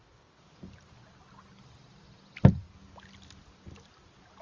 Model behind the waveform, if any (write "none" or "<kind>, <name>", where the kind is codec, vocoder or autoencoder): none